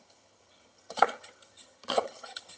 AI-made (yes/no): yes